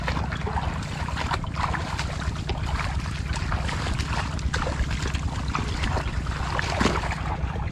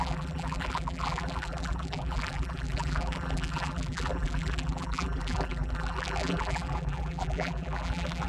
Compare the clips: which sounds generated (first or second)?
second